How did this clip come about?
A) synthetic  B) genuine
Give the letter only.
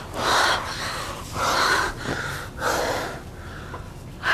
B